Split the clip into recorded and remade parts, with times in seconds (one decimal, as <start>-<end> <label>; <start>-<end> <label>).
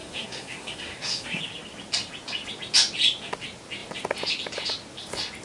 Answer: 0.0-1.4 remade; 1.4-5.4 recorded